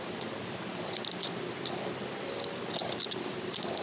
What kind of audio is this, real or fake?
real